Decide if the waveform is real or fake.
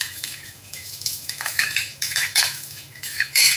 fake